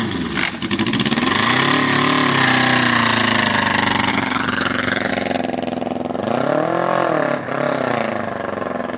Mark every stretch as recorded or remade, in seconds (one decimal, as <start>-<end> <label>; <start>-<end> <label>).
0.0-4.1 recorded; 4.1-5.1 remade; 5.1-9.0 recorded